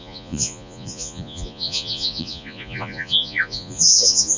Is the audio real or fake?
fake